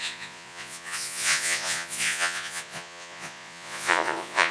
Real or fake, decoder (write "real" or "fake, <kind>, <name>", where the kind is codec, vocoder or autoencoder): fake, vocoder, Vocos